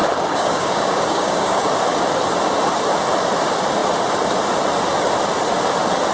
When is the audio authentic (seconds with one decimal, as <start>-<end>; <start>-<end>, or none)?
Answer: 1.7-6.1